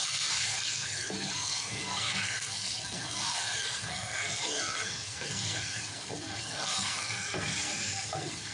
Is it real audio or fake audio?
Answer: fake